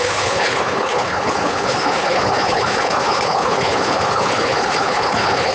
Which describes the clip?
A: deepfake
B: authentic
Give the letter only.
A